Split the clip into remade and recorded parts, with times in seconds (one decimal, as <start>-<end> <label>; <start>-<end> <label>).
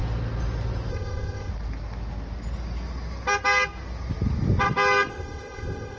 0.0-0.9 recorded; 0.9-1.5 remade; 1.5-5.1 recorded; 5.1-6.0 remade